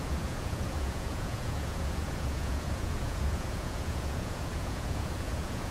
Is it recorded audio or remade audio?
remade